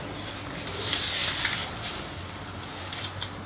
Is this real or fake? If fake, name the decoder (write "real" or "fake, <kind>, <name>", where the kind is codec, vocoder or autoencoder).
real